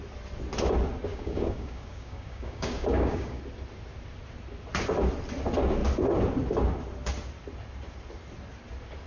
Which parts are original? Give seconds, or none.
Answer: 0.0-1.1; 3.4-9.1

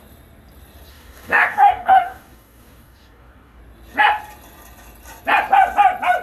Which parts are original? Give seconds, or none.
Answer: 0.0-0.9; 3.6-6.2